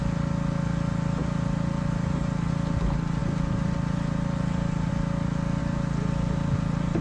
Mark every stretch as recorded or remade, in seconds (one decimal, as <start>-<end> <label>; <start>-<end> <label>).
0.0-1.2 recorded; 1.2-2.5 remade; 2.5-3.2 recorded; 3.2-4.9 remade; 4.9-5.6 recorded; 5.6-7.0 remade